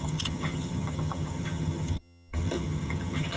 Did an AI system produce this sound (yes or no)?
yes